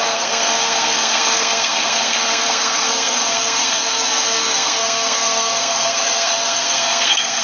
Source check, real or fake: fake